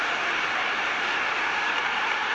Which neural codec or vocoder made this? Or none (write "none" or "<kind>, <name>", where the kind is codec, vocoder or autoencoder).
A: vocoder, BigVGAN v2